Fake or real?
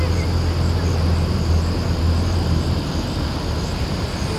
real